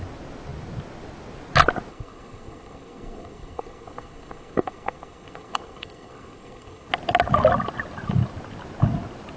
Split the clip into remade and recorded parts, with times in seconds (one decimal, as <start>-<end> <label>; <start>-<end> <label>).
0.0-1.9 recorded; 1.9-6.9 remade; 6.9-9.4 recorded